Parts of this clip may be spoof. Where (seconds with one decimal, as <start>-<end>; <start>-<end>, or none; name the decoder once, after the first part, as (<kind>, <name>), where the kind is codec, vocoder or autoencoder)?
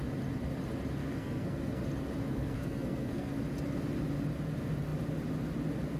1.0-1.8 (codec, SNAC); 2.2-3.3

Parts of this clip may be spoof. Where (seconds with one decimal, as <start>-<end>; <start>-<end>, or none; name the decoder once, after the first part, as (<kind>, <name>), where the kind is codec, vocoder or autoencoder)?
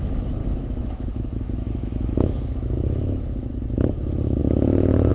0.4-3.5 (autoencoder, DAC-VAE)